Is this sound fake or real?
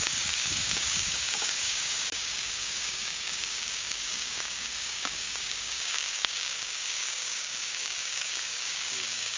fake